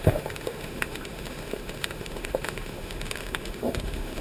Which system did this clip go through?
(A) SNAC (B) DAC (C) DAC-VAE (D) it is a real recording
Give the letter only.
C